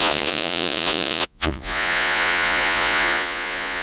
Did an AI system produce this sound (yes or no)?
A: yes